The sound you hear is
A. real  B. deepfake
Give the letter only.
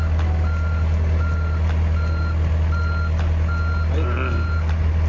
A